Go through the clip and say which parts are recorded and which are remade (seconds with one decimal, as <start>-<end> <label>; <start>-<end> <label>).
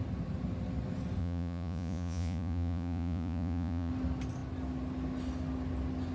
0.0-1.2 recorded; 1.2-3.9 remade; 3.9-6.1 recorded